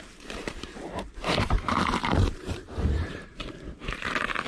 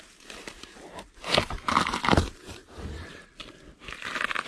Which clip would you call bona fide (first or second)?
second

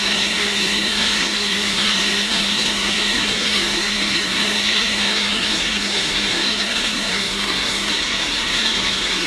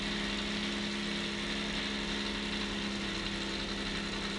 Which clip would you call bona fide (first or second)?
second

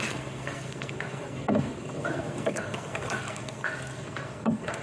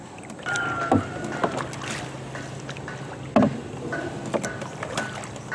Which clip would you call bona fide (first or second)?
second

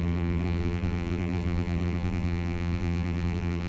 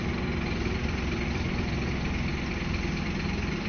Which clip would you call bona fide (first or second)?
second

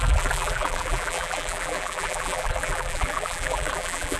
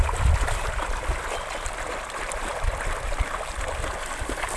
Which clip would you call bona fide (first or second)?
second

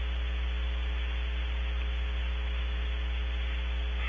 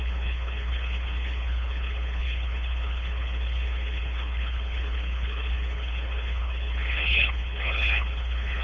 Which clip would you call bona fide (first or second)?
first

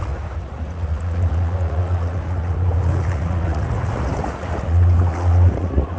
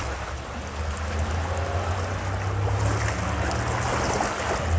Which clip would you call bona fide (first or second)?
second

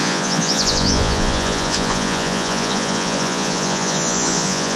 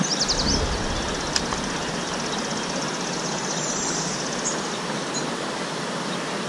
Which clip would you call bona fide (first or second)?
second